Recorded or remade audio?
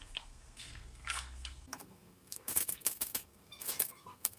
remade